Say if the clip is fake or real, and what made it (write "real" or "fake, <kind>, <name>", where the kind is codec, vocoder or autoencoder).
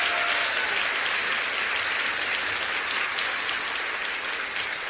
real